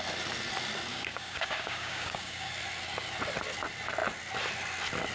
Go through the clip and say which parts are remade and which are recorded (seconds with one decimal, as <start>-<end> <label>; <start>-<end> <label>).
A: 0.0-0.9 recorded; 0.9-2.5 remade; 2.5-5.1 recorded